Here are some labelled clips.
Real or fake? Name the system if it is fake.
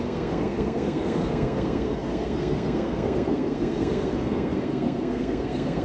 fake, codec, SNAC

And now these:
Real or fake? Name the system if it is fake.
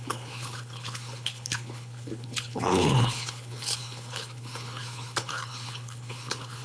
fake, codec, HILCodec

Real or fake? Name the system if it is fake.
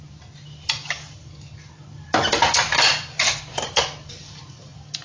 real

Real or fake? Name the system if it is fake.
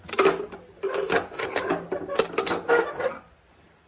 real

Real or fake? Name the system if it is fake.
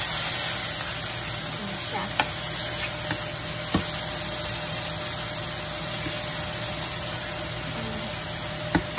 real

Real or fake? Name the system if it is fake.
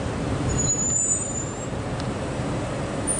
fake, vocoder, BigVGAN v2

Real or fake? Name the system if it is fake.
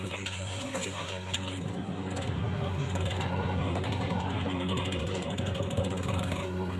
fake, codec, SNAC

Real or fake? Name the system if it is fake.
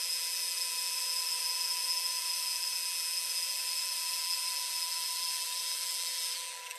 fake, vocoder, BigVGAN v2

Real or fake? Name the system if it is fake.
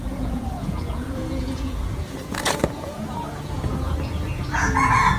fake, vocoder, Vocos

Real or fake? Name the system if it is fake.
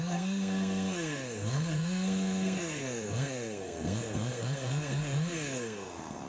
fake, codec, SNAC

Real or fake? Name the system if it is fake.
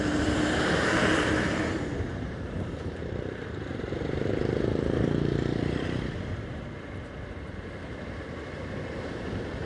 fake, vocoder, BigVGAN v2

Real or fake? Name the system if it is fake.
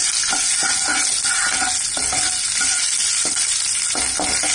real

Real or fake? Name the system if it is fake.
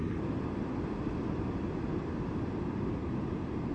real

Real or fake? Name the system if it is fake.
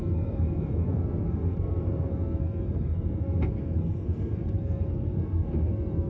fake, codec, SNAC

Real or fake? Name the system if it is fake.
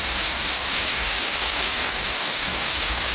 fake, codec, DAC